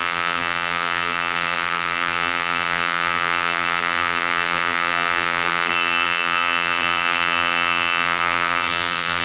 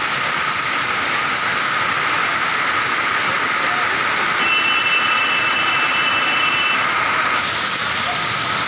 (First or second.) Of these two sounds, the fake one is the first